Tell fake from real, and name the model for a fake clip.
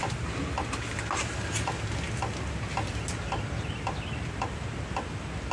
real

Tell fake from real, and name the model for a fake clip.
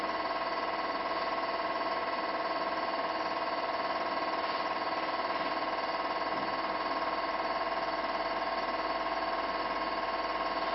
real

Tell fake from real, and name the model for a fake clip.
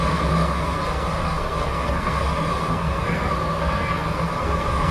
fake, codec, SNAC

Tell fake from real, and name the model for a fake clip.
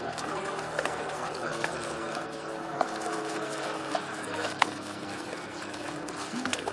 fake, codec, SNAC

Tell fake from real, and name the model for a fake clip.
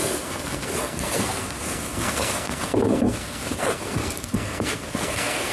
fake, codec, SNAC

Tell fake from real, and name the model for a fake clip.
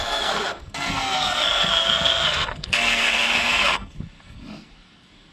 fake, codec, SNAC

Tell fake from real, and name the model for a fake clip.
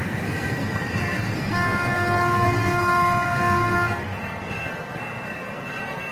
fake, codec, SNAC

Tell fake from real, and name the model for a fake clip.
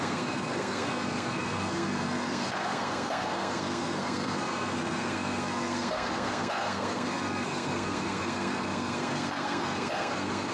fake, codec, SNAC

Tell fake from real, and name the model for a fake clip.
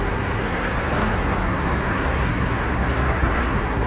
fake, codec, SNAC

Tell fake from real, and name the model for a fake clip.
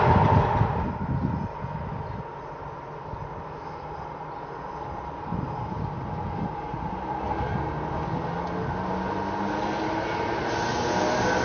real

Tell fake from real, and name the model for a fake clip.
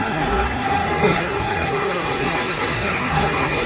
fake, codec, SNAC